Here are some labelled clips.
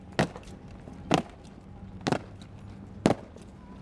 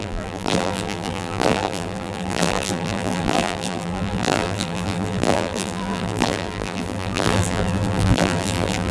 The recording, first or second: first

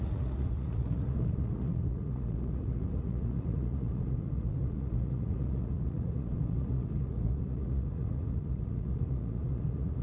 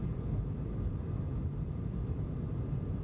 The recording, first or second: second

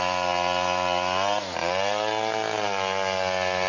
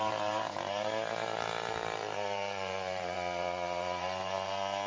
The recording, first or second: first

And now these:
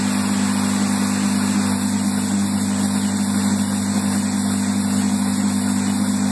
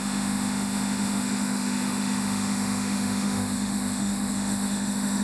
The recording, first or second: first